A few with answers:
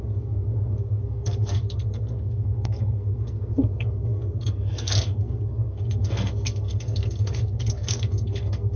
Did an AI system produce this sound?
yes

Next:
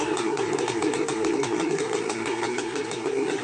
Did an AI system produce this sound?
yes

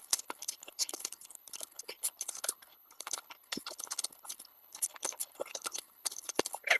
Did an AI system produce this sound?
yes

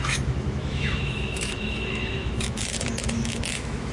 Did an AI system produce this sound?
yes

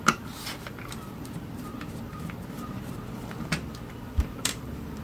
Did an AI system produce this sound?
yes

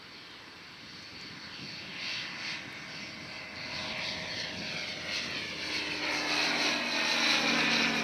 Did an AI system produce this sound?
no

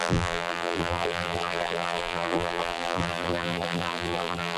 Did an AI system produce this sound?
yes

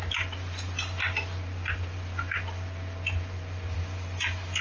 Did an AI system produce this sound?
no